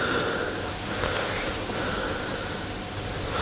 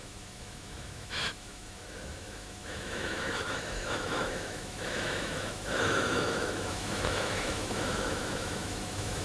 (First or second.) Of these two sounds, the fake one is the second